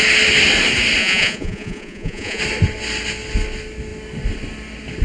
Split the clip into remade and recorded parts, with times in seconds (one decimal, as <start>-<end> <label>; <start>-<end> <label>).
0.0-1.0 recorded; 1.0-2.4 remade; 2.4-5.0 recorded